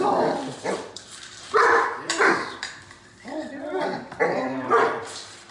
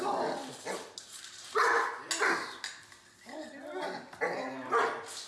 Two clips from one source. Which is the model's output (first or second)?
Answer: first